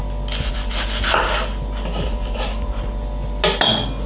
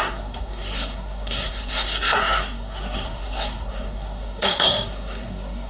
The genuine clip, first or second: first